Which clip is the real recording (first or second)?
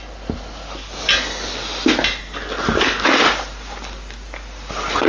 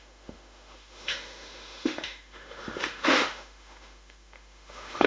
first